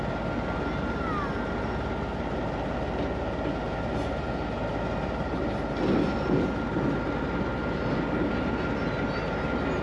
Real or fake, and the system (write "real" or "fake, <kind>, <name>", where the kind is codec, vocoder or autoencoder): real